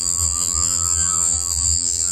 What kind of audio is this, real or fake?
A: fake